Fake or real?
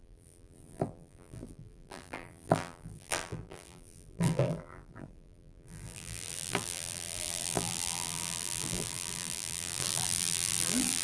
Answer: fake